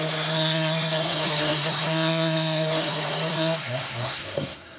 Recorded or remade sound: remade